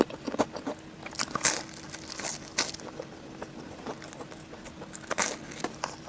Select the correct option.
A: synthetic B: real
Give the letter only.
B